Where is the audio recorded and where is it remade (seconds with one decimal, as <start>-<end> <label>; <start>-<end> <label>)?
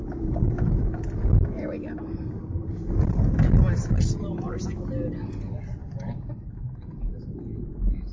0.0-5.8 recorded; 5.8-7.1 remade; 7.1-8.1 recorded